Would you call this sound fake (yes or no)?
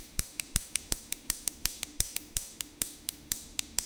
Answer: yes